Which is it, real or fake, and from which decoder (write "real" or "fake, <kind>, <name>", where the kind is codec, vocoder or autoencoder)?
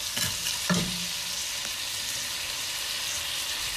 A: real